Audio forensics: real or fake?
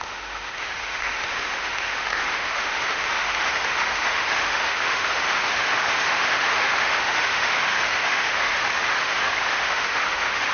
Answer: fake